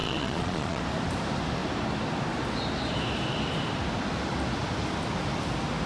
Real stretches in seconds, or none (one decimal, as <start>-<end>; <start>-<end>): 0.8-5.9